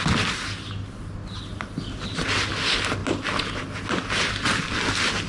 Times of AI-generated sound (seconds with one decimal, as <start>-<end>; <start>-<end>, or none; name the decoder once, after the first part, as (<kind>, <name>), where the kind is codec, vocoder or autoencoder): none